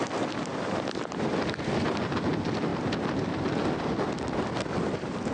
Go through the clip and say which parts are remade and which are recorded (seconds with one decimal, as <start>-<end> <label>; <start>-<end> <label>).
0.0-5.3 recorded